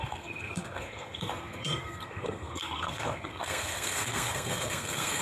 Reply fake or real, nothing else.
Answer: fake